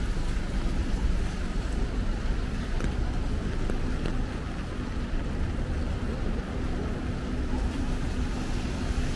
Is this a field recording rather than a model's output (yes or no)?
yes